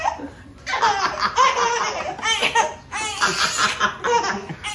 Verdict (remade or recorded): recorded